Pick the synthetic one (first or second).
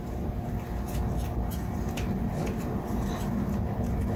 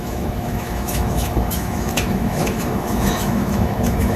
second